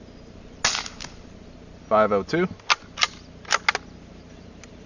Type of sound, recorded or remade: recorded